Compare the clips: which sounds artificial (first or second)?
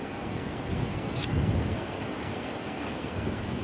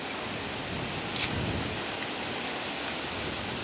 first